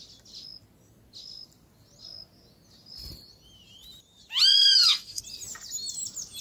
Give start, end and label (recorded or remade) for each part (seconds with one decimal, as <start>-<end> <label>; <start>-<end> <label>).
0.0-4.5 recorded; 4.5-5.2 remade; 5.2-6.4 recorded